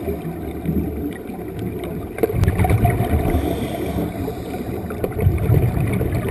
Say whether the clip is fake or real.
real